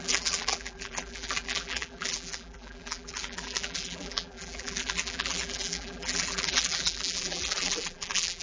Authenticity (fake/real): fake